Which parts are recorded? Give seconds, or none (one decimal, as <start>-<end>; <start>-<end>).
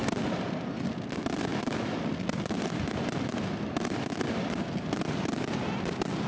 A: 0.0-6.3